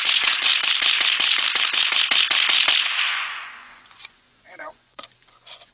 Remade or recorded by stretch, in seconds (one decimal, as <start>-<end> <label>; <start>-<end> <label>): 0.0-0.5 remade; 0.5-2.8 recorded; 2.8-5.7 remade